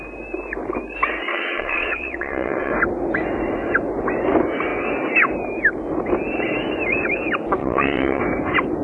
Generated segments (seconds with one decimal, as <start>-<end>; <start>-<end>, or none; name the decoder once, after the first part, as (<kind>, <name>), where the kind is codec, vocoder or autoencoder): 1.3-2.7 (vocoder, WaveNeXt); 7.6-8.2